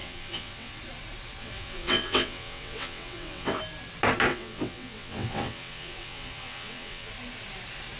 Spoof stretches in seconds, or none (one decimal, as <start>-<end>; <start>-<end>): 0.0-0.8; 1.4-3.6; 4.3-7.1